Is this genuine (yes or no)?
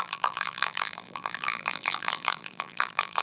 no